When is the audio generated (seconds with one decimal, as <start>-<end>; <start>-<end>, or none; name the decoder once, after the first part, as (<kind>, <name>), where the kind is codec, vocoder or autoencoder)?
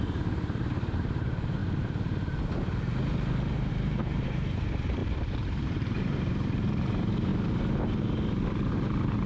0.0-1.6 (vocoder, BigVGAN v2); 3.7-7.3; 8.7-9.3